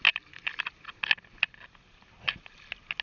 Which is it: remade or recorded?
recorded